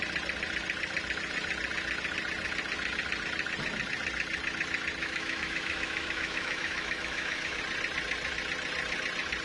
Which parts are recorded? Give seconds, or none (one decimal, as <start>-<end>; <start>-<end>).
0.0-5.0; 7.6-9.4